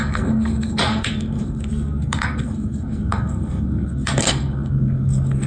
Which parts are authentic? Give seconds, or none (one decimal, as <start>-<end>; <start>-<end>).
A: none

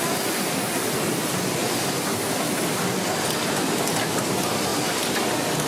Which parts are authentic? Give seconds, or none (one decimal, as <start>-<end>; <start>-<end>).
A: 0.0-5.7

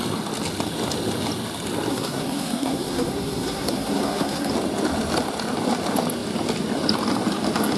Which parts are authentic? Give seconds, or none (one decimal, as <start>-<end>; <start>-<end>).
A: 0.0-1.9; 4.5-7.8

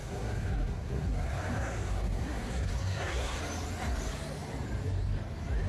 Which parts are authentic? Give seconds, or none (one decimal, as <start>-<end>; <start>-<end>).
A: 3.4-5.7

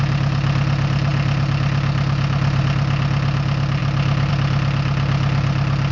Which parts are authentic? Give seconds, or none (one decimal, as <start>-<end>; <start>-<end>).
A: 0.0-5.9

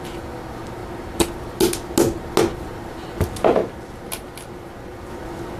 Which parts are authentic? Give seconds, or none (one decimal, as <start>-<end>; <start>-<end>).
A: 0.0-5.6